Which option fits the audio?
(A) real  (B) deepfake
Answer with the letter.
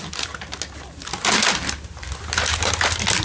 A